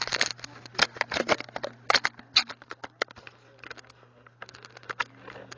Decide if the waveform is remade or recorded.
recorded